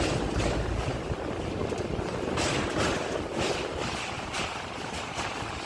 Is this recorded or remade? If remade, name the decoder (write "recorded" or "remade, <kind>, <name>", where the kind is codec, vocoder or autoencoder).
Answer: recorded